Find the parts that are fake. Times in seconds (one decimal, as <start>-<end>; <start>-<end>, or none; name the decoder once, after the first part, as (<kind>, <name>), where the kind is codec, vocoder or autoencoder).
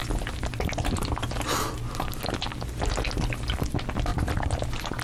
none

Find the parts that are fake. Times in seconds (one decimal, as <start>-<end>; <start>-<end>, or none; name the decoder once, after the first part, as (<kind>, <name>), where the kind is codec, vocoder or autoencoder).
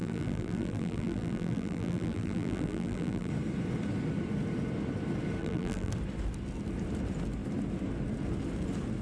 0.0-3.3 (vocoder, BigVGAN v2); 5.4-5.9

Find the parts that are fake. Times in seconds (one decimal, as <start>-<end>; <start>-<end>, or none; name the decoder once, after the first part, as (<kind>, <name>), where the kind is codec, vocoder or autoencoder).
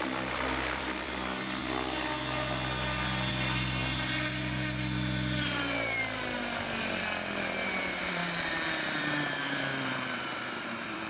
0.0-1.6 (vocoder, BigVGAN v2); 3.3-3.8; 7.8-8.2; 9.0-11.1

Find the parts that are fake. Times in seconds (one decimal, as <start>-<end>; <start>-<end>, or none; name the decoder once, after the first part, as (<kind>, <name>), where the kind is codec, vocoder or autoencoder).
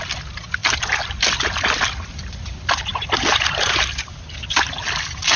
3.3-4.6 (vocoder, BigVGAN v2)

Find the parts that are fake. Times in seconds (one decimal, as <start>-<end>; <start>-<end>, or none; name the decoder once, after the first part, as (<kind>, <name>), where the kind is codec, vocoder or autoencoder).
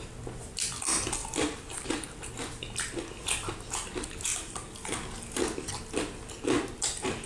1.2-2.3 (vocoder, BigVGAN v2); 4.3-5.0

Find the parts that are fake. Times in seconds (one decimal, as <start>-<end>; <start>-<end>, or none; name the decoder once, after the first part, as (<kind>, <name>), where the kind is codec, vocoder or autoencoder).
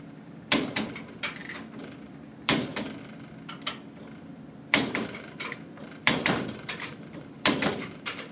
0.0-1.4 (vocoder, BigVGAN v2); 2.1-2.7; 4.3-8.3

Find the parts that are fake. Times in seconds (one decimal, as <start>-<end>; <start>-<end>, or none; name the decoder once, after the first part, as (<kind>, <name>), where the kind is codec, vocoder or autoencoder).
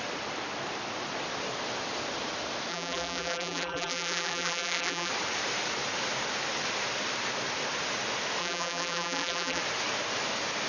2.7-5.1 (vocoder, BigVGAN v2); 8.4-9.6